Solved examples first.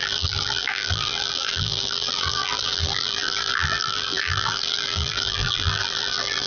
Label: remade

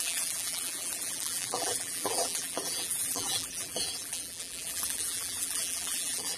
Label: remade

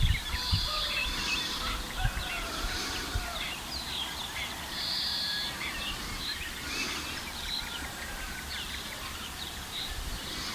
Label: remade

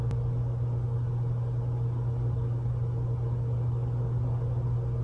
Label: recorded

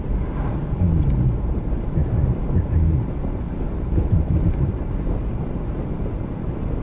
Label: recorded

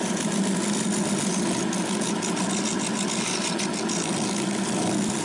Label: recorded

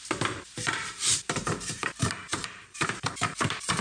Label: remade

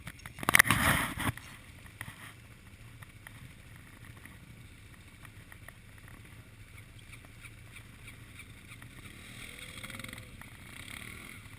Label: recorded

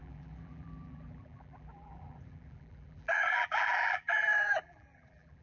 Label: remade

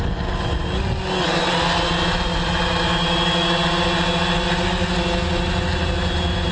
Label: recorded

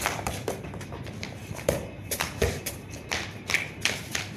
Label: remade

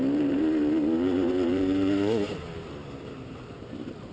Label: remade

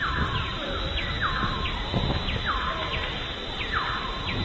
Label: recorded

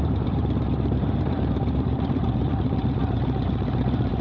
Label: remade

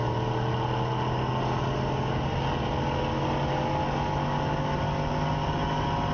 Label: recorded